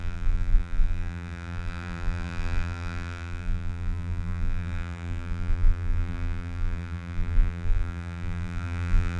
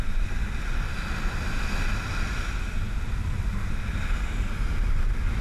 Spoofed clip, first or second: first